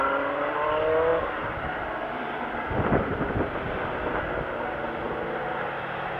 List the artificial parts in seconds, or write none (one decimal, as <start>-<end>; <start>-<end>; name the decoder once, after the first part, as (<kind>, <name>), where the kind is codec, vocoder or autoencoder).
none

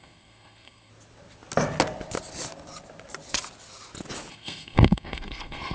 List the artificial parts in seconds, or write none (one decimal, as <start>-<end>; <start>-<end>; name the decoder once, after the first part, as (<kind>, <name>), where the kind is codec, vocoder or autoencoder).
0.0-0.9 (codec, SNAC); 4.3-5.7

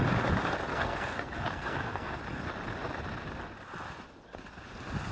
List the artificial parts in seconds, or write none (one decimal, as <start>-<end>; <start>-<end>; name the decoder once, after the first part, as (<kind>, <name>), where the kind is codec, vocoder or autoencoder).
0.7-2.2 (codec, SNAC)

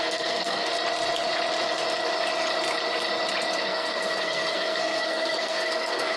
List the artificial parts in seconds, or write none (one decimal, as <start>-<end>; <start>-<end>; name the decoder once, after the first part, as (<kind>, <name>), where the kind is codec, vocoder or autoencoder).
0.0-0.7 (codec, SNAC); 3.6-6.2